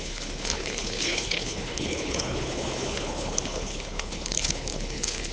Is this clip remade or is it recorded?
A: remade